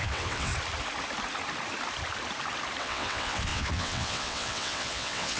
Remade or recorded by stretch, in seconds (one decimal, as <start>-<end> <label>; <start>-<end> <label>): 0.0-0.5 remade; 0.5-2.8 recorded; 2.8-5.4 remade